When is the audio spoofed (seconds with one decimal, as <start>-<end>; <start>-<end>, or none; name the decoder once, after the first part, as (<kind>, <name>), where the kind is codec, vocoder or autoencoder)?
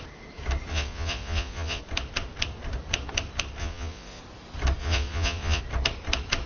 0.7-1.8 (vocoder, Vocos); 3.6-4.2; 4.8-5.6